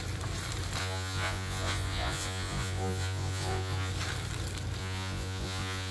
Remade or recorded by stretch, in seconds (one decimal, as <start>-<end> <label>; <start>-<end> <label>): 0.0-0.8 recorded; 0.8-3.9 remade; 3.9-4.8 recorded; 4.8-5.9 remade